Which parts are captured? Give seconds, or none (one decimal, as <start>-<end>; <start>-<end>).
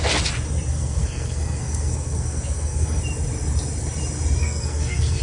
0.0-0.7; 3.0-4.4